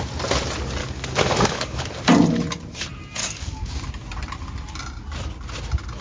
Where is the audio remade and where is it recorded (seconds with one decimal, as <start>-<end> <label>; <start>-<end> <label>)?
0.0-0.8 recorded; 0.8-1.8 remade; 1.8-3.2 recorded; 3.2-3.9 remade; 3.9-6.0 recorded